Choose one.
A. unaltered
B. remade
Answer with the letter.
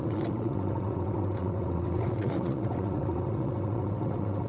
B